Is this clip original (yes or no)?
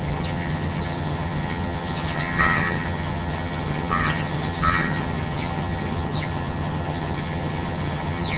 no